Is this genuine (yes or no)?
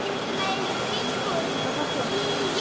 yes